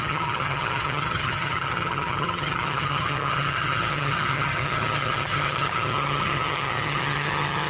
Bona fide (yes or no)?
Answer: no